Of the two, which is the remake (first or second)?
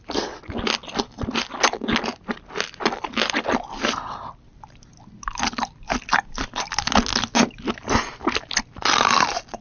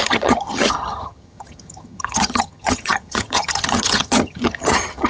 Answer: second